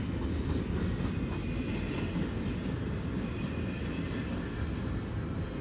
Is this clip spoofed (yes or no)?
no